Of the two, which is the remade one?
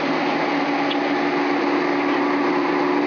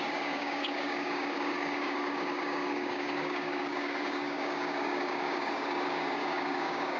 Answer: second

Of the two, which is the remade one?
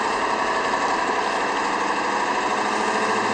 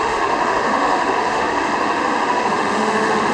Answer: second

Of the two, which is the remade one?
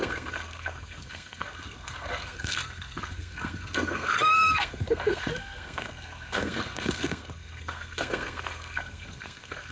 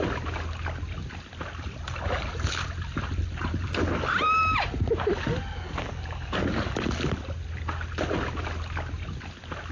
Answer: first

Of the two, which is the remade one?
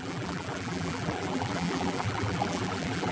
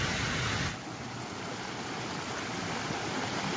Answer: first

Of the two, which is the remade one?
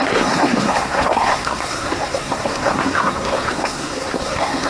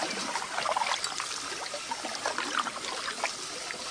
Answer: first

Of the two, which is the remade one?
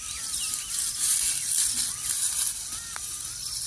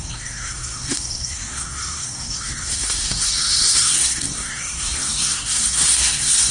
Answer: second